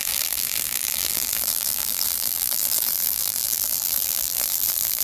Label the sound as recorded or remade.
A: remade